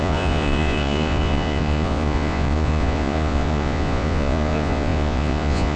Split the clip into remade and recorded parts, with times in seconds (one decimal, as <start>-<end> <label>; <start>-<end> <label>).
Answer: 0.0-5.8 remade